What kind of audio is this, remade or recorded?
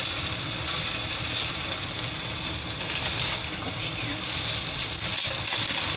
recorded